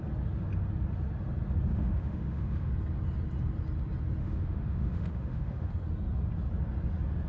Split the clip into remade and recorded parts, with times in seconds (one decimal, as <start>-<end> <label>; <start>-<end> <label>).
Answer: 0.0-1.7 recorded; 1.7-2.7 remade; 2.7-4.2 recorded; 4.2-5.7 remade; 5.7-7.3 recorded